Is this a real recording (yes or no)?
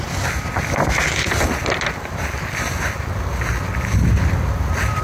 yes